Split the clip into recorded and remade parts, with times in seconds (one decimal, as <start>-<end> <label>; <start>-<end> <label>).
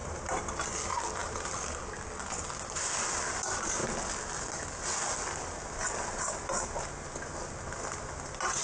0.0-0.7 remade; 0.7-1.2 recorded; 1.2-1.8 remade; 1.8-8.6 recorded